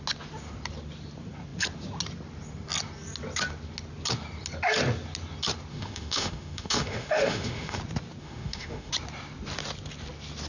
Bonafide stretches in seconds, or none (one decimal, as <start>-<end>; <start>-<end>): 0.0-5.7; 7.8-8.2; 8.9-10.5